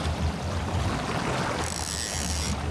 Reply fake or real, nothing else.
real